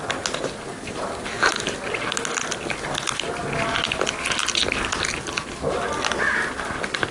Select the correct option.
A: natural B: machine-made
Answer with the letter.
A